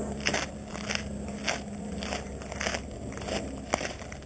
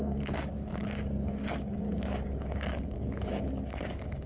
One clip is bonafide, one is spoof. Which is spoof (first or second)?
second